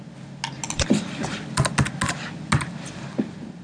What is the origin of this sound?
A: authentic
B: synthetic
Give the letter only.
A